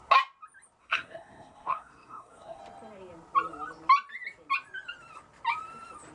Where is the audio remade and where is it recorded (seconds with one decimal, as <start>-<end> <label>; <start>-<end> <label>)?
0.0-0.8 recorded; 0.8-2.6 remade; 2.6-6.1 recorded

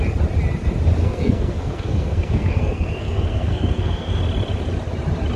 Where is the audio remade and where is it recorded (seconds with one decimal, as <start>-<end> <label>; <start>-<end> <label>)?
0.0-1.0 recorded; 1.0-4.2 remade; 4.2-5.4 recorded

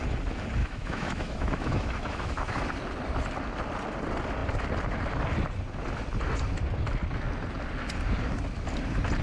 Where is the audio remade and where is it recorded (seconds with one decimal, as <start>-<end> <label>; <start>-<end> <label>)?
0.0-0.6 recorded; 0.6-2.6 remade; 2.6-9.2 recorded

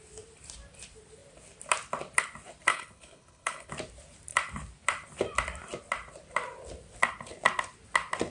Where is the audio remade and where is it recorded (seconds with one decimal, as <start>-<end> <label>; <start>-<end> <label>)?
0.0-2.7 recorded; 2.7-3.7 remade; 3.7-8.3 recorded

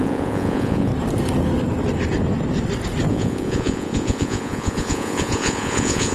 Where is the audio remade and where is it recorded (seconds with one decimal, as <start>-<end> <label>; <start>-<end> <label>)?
0.0-0.9 remade; 0.9-3.1 recorded; 3.1-6.1 remade

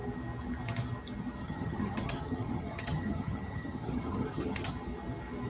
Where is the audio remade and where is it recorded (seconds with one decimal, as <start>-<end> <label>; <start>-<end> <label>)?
0.0-1.4 recorded; 1.4-4.7 remade; 4.7-5.5 recorded

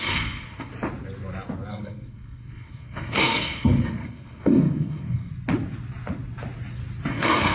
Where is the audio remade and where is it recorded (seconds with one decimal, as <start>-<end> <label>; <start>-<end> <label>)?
0.0-0.7 remade; 0.7-1.7 recorded; 1.7-5.3 remade; 5.3-7.1 recorded; 7.1-7.5 remade

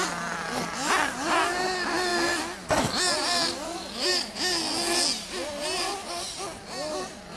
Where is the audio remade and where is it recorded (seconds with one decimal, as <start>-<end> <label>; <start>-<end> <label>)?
0.0-7.4 recorded